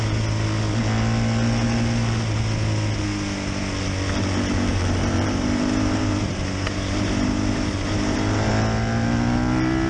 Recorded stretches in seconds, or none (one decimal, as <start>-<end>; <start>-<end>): 0.0-4.7; 8.5-9.9